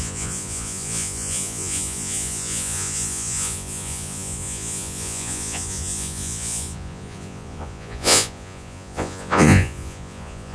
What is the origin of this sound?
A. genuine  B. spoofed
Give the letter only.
B